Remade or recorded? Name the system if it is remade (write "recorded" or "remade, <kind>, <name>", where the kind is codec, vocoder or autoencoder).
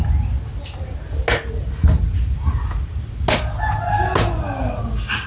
recorded